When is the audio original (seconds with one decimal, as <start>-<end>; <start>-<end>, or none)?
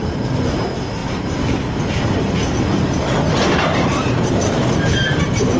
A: 0.0-2.4; 3.1-3.9; 4.7-5.6